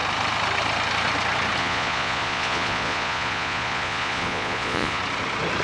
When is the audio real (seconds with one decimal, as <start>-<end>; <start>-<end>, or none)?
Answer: 0.0-1.6; 5.0-5.6